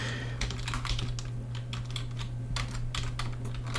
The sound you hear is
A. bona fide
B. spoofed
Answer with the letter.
A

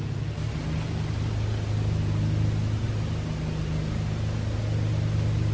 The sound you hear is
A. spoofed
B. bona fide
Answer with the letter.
B